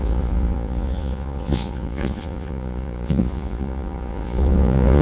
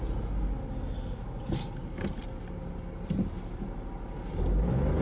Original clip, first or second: second